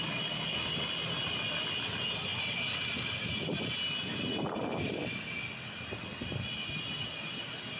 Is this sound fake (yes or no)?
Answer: no